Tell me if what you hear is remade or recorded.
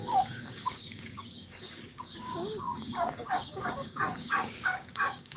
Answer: remade